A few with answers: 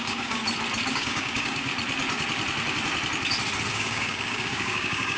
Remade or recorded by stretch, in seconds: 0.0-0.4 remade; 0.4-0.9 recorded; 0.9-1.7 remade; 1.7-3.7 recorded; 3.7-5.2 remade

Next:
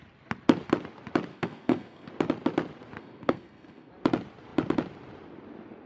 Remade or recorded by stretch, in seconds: 0.0-1.3 recorded; 1.3-2.1 remade; 2.1-3.0 recorded; 3.0-3.9 remade; 3.9-5.9 recorded

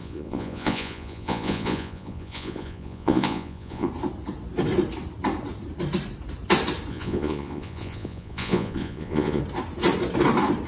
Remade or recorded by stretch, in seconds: 0.0-3.9 remade; 3.9-6.9 recorded; 6.9-9.4 remade; 9.4-10.7 recorded

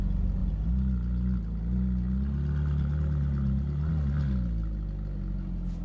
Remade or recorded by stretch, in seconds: 0.0-5.8 recorded